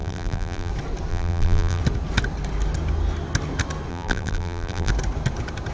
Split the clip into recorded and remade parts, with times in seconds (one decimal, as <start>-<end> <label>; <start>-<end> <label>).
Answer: 0.0-0.7 remade; 0.7-1.1 recorded; 1.1-1.8 remade; 1.8-3.9 recorded; 3.9-4.9 remade; 4.9-5.7 recorded